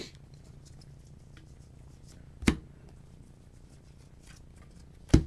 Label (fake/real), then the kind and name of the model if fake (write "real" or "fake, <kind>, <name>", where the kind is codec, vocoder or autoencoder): real